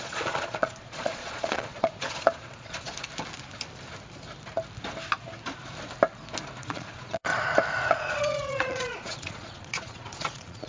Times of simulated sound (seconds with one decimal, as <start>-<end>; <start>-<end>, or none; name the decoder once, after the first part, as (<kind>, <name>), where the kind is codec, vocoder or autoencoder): 0.0-2.9 (vocoder, Vocos); 6.6-7.3; 7.9-10.7